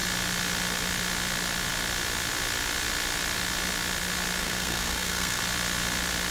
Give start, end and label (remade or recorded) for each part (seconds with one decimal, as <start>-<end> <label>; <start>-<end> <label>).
0.0-4.4 recorded; 4.4-5.4 remade; 5.4-6.3 recorded